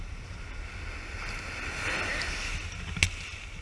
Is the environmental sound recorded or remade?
recorded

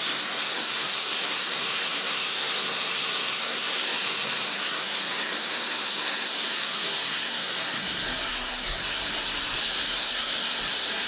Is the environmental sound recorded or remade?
remade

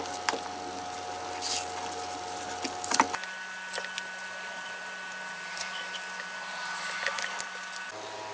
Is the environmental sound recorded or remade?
recorded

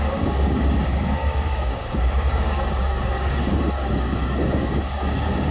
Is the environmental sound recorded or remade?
remade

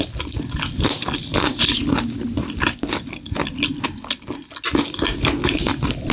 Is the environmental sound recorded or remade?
recorded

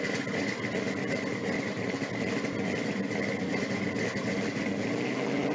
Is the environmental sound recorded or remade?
recorded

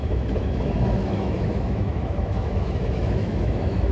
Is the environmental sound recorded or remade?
remade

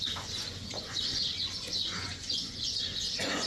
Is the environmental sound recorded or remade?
remade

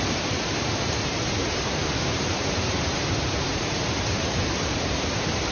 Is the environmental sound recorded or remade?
remade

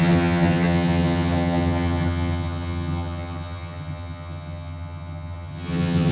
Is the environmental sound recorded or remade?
remade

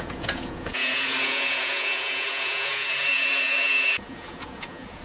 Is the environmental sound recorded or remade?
remade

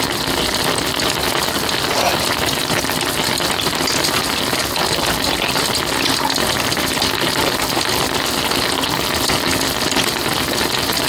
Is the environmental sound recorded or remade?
recorded